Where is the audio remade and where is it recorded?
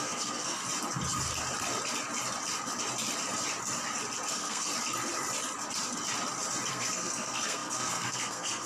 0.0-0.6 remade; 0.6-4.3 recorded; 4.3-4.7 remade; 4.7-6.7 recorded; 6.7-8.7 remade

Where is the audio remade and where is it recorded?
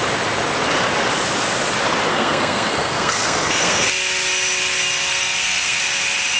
0.0-2.1 recorded; 2.1-3.9 remade; 3.9-5.1 recorded; 5.1-5.8 remade; 5.8-6.4 recorded